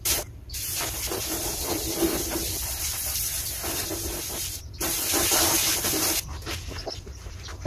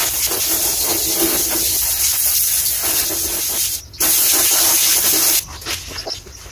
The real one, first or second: second